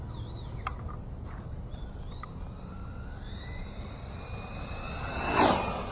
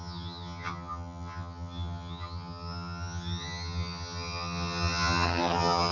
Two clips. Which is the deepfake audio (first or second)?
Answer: second